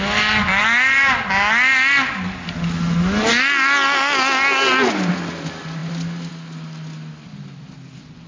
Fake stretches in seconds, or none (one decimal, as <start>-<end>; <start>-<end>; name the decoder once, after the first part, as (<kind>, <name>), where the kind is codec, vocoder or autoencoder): none